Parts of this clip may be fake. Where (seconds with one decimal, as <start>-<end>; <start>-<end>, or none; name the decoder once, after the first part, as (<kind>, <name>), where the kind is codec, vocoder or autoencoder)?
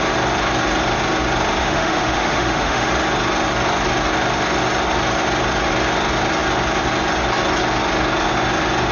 1.6-2.9 (autoencoder, DAC-VAE)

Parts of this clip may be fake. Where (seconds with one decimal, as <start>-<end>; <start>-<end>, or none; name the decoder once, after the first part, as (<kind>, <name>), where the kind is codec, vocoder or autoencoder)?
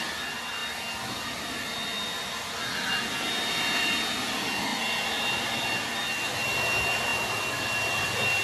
none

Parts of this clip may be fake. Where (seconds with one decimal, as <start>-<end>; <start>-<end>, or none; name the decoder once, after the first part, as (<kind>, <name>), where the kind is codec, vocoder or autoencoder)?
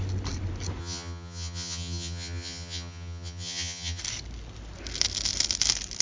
0.8-4.0 (vocoder, HiFi-GAN)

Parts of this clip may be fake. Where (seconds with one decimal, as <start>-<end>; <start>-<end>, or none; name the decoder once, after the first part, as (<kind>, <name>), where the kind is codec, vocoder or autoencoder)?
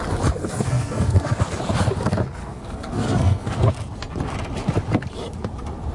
0.4-1.4 (codec, SNAC); 2.4-3.7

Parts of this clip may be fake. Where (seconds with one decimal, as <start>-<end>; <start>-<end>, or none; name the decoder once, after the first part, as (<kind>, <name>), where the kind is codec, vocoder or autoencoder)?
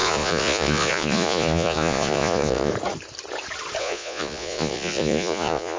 0.0-2.7 (vocoder, Vocos); 3.8-5.8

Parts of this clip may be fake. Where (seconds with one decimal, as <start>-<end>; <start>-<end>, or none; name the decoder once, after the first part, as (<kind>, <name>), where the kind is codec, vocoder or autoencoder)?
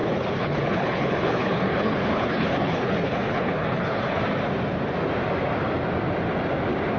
0.0-4.2 (codec, HILCodec)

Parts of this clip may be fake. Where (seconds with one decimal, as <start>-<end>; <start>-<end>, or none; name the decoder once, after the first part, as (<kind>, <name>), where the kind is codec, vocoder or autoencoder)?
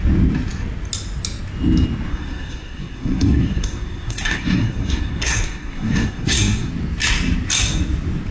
2.1-6.7 (codec, SNAC)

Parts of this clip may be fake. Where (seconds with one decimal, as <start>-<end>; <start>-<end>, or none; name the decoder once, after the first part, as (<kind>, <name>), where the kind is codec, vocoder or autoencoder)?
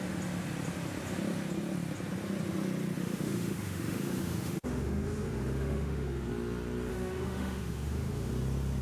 3.0-6.3 (autoencoder, DAC-VAE); 6.9-8.3